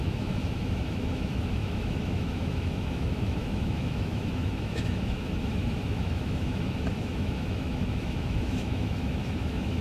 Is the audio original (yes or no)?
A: no